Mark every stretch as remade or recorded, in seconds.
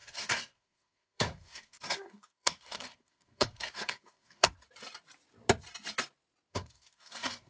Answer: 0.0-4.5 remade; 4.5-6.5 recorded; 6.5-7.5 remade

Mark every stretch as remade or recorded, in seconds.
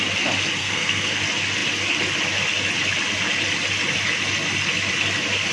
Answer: 0.0-0.6 recorded; 0.6-1.2 remade; 1.2-5.5 recorded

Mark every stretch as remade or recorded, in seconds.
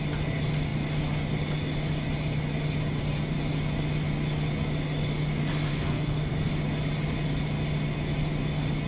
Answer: 0.0-5.7 recorded; 5.7-6.5 remade; 6.5-8.9 recorded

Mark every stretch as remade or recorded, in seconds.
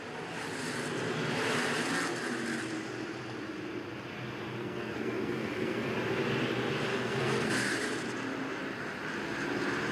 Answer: 0.0-4.6 recorded; 4.6-5.9 remade; 5.9-6.9 recorded; 6.9-7.5 remade; 7.5-9.9 recorded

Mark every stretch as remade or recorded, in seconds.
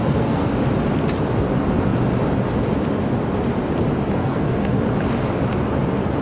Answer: 0.0-0.5 remade; 0.5-4.2 recorded; 4.2-4.8 remade; 4.8-6.2 recorded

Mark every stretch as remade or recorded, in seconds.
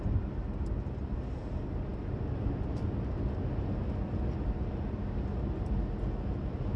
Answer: 0.0-6.8 recorded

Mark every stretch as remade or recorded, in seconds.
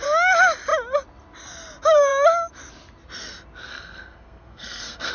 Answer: 0.0-3.7 recorded; 3.7-5.1 remade